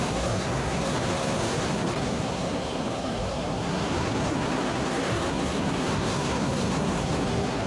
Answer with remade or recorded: remade